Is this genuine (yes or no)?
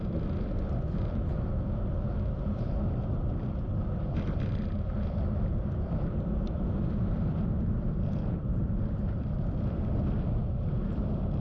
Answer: no